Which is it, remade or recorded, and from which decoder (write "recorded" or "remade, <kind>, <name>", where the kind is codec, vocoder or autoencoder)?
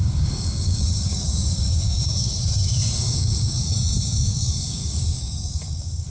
remade, codec, DAC